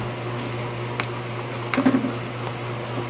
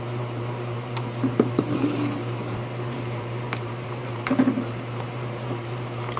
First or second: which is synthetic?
second